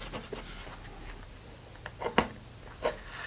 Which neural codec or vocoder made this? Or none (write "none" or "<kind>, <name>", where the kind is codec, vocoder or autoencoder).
none